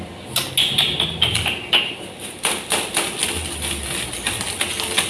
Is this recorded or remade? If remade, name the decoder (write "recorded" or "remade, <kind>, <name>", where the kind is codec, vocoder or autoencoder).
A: recorded